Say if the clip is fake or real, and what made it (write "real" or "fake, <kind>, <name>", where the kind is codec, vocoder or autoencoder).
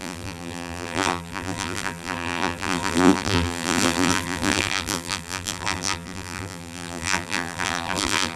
fake, vocoder, BigVGAN v2